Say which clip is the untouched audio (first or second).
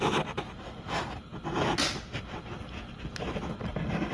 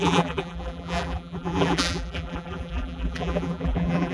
first